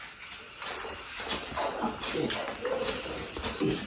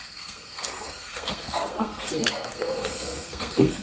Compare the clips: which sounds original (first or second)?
first